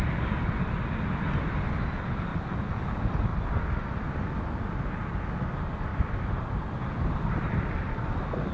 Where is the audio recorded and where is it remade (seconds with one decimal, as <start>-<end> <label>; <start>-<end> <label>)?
0.0-2.3 recorded; 2.3-2.8 remade; 2.8-5.9 recorded; 5.9-6.9 remade; 6.9-8.5 recorded